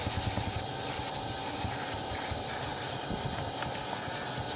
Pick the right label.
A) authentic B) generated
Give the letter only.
A